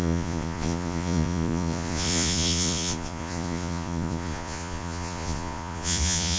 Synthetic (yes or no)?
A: yes